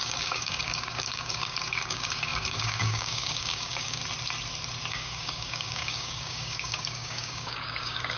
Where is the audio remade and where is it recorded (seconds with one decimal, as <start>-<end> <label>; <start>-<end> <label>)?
0.0-4.0 remade; 4.0-4.9 recorded; 4.9-8.2 remade